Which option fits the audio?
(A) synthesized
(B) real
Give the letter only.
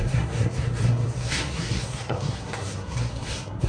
A